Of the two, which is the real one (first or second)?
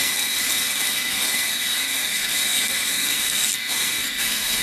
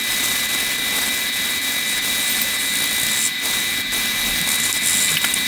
second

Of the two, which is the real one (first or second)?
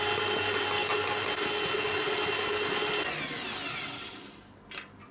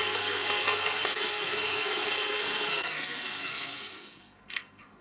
first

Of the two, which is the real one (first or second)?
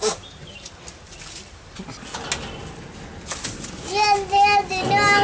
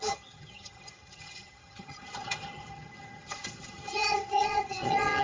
first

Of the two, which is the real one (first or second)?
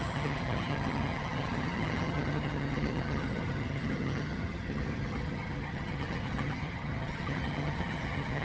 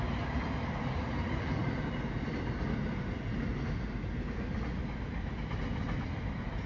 second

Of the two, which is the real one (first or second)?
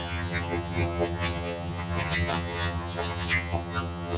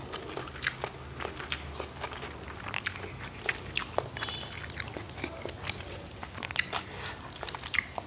second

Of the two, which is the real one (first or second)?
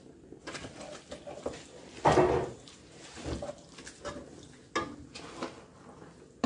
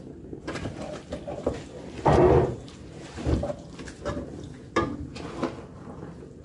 first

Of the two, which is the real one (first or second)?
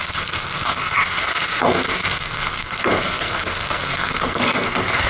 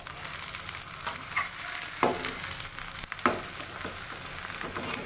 second